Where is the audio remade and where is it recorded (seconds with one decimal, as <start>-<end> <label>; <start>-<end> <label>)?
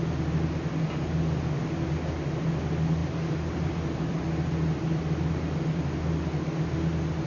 0.0-3.0 recorded; 3.0-4.2 remade; 4.2-7.3 recorded